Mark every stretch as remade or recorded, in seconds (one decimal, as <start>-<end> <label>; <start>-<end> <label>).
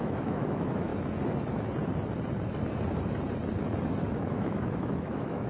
0.0-0.9 remade; 0.9-4.2 recorded; 4.2-5.5 remade